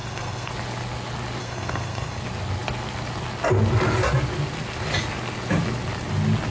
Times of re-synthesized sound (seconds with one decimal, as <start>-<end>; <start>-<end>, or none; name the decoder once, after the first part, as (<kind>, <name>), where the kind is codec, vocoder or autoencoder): 0.0-0.5 (codec, SNAC); 1.4-2.2